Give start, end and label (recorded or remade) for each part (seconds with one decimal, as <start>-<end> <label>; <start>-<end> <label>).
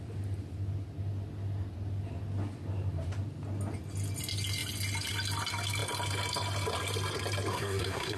0.0-7.5 recorded; 7.5-8.2 remade